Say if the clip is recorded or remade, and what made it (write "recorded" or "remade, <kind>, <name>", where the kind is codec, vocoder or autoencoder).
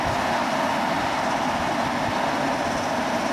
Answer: recorded